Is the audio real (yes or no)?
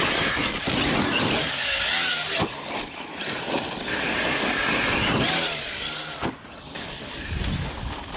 yes